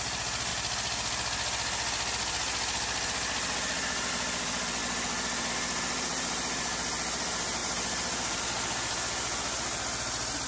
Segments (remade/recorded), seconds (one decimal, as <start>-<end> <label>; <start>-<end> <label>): 0.0-10.5 recorded

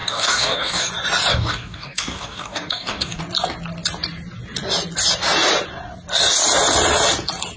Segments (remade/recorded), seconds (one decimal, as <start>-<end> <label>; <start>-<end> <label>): 0.0-0.9 remade; 0.9-1.3 recorded; 1.3-3.2 remade; 3.2-7.6 recorded

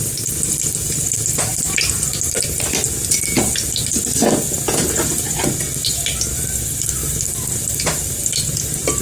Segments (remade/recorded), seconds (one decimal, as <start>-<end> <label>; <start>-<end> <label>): 0.0-9.0 recorded